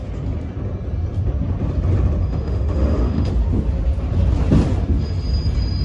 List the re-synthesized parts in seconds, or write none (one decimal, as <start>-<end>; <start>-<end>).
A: 2.2-3.3